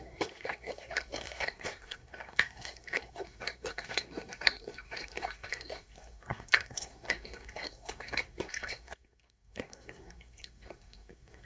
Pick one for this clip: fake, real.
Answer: fake